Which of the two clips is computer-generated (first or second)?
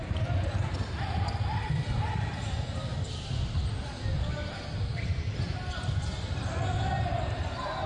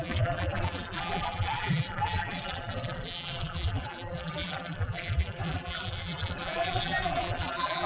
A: second